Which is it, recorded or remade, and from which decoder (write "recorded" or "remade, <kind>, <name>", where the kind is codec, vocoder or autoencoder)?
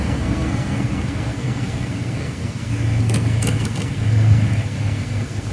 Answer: remade, codec, SNAC